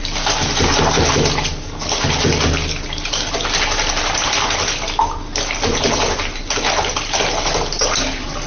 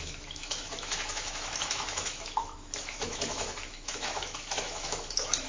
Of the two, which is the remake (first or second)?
second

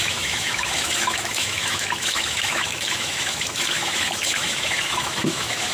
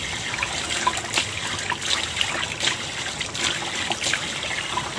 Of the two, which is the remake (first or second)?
first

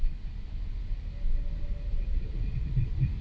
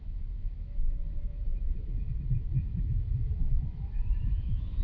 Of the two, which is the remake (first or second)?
second